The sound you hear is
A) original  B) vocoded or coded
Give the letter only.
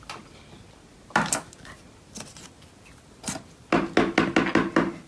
A